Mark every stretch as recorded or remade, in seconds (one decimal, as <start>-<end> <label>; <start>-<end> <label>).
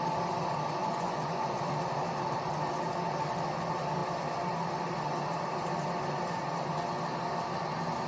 0.0-0.8 recorded; 0.8-1.6 remade; 1.6-8.1 recorded